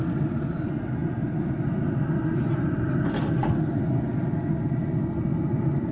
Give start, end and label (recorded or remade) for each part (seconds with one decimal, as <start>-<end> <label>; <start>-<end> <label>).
0.0-5.9 recorded